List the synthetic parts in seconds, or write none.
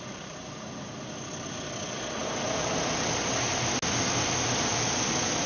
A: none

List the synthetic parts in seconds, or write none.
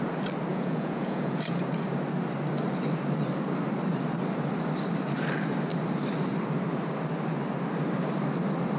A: 0.5-1.6 (vocoder, Vocos)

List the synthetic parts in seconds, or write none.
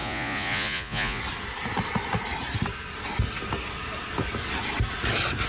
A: 0.0-1.2 (vocoder, Vocos)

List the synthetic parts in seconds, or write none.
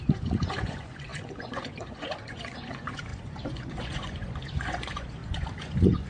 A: 0.0-6.1 (vocoder, Vocos)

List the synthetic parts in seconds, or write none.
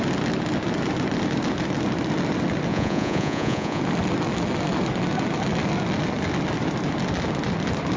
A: 2.7-3.8 (vocoder, Vocos)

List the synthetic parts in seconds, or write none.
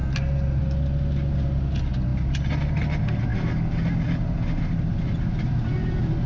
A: none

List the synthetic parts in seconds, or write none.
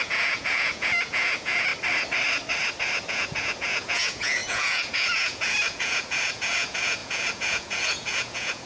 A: 0.0-1.7 (vocoder, Vocos); 3.1-8.7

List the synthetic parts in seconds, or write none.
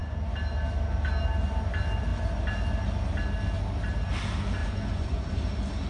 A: 4.6-5.3 (vocoder, Vocos)